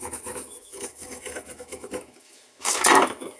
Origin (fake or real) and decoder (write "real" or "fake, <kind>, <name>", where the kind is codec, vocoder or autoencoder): fake, autoencoder, DAC-VAE